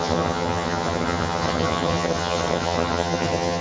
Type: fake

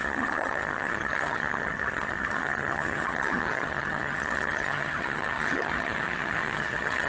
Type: fake